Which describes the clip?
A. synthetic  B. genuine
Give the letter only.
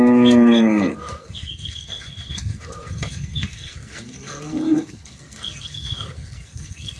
A